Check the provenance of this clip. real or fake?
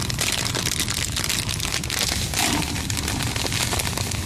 real